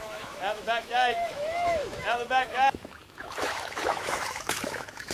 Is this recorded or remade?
remade